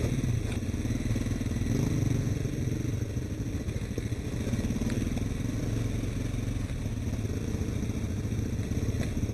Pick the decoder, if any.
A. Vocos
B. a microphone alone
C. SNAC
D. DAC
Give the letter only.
B